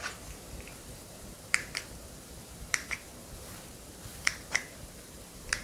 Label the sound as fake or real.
fake